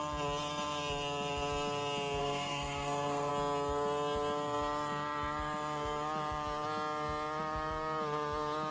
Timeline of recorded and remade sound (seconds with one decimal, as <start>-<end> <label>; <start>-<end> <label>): 0.0-2.2 recorded; 2.2-3.3 remade; 3.3-8.7 recorded